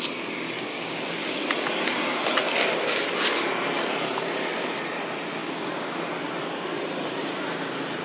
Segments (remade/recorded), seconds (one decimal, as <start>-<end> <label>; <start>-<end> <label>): 0.0-0.7 recorded; 0.7-1.4 remade; 1.4-5.4 recorded; 5.4-6.0 remade; 6.0-8.0 recorded